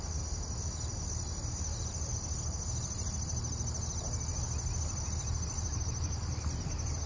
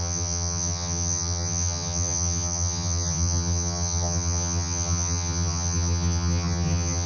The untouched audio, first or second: first